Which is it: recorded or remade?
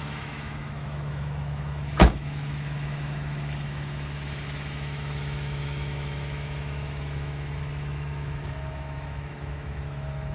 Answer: remade